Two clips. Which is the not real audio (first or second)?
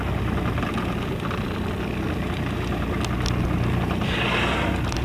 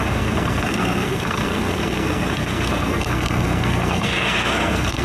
second